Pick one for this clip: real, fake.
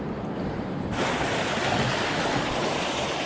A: real